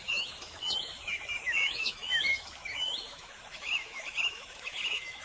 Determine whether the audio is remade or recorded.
remade